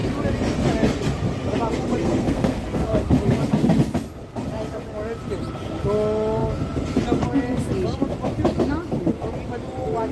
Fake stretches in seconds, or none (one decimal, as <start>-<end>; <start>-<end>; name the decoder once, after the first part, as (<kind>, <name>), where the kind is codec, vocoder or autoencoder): 2.0-3.1 (codec, SNAC)